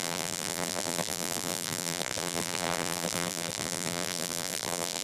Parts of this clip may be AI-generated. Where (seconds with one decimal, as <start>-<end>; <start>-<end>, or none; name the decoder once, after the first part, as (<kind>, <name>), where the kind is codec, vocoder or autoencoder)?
0.0-5.0 (vocoder, BigVGAN v2)